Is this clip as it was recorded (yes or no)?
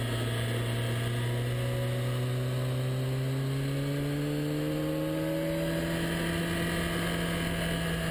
yes